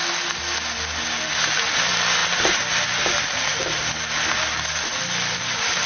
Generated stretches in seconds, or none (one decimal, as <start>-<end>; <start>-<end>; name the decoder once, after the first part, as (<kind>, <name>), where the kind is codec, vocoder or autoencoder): none